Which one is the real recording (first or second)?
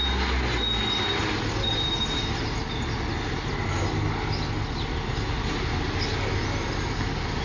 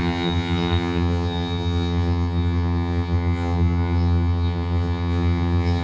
first